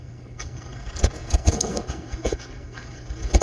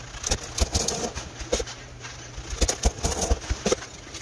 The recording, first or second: second